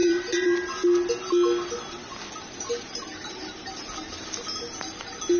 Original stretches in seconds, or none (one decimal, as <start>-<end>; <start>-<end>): 0.7-5.4